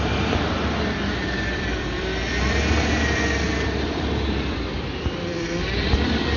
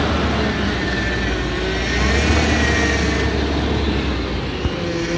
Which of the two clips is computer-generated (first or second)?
first